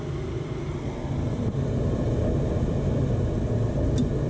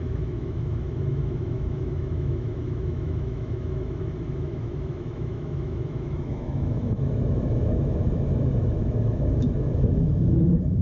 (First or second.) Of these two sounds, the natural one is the first